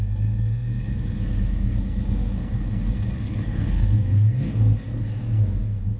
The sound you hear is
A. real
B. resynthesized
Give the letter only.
B